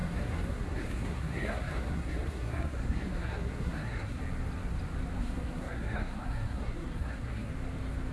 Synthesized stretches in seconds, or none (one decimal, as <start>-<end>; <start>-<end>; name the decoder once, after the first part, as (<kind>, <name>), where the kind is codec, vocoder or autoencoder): 0.0-4.2 (codec, SNAC); 5.2-7.5